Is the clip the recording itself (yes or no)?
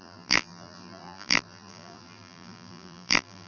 no